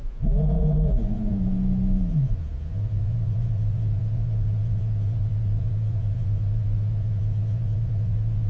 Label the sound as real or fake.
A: fake